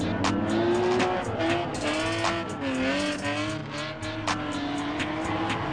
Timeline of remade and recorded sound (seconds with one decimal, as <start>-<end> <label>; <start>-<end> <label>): 0.0-5.7 recorded